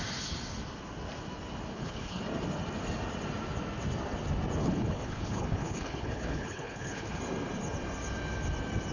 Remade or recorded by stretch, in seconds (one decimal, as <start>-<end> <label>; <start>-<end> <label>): 0.0-1.7 recorded; 1.7-2.2 remade; 2.2-4.6 recorded; 4.6-7.2 remade; 7.2-8.9 recorded